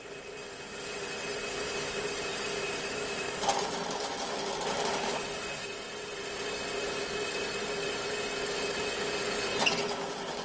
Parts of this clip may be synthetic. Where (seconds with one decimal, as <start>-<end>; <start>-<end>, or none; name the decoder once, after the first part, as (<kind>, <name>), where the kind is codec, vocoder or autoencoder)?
2.3-4.4 (vocoder, BigVGAN v2)